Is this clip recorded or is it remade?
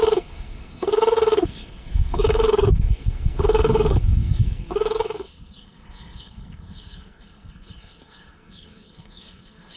remade